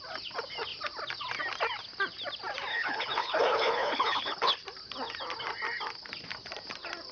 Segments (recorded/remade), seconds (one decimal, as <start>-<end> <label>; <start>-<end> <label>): 0.0-2.7 recorded; 2.7-4.5 remade; 4.5-7.1 recorded

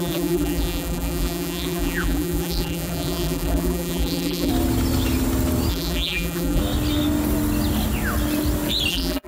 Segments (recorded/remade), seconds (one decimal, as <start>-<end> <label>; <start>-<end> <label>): 0.0-4.5 remade; 4.5-5.7 recorded; 5.7-6.6 remade; 6.6-8.9 recorded; 8.9-9.3 remade

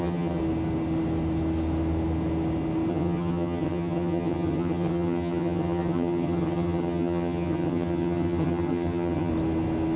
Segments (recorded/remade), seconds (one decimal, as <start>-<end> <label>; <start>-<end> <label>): 0.0-0.4 remade; 0.4-2.9 recorded; 2.9-9.3 remade; 9.3-10.0 recorded